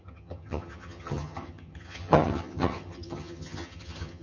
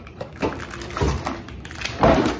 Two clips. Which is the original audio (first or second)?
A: second